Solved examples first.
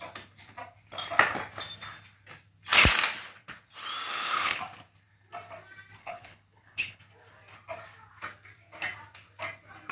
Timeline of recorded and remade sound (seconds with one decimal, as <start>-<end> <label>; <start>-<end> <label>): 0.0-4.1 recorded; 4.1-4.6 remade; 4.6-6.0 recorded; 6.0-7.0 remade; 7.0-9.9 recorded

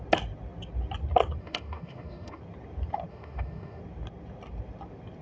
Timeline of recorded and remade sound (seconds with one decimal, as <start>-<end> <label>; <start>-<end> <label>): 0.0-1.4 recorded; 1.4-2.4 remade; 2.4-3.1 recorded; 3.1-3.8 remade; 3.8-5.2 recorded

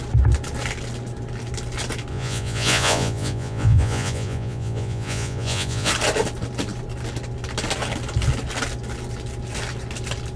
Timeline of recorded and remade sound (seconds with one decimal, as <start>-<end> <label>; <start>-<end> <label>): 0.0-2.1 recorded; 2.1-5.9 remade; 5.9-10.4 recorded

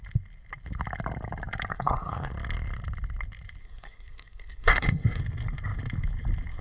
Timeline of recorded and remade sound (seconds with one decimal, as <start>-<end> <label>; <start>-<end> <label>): 0.0-1.7 recorded; 1.7-2.3 remade; 2.3-3.6 recorded; 3.6-5.2 remade; 5.2-6.6 recorded

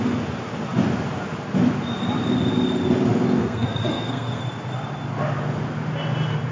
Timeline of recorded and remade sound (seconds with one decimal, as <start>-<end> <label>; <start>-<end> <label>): 0.0-3.4 recorded; 3.4-4.4 remade; 4.4-6.5 recorded